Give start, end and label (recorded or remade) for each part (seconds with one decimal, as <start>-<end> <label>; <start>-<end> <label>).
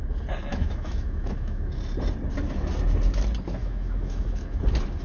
0.0-0.5 recorded; 0.5-1.8 remade; 1.8-3.6 recorded; 3.6-4.6 remade; 4.6-5.0 recorded